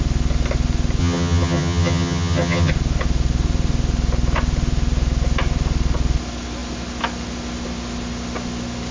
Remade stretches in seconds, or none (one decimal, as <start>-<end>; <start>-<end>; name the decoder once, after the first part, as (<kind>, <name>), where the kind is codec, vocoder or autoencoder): 1.0-2.7 (vocoder, HiFi-GAN)